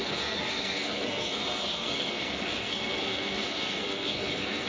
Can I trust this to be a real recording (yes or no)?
no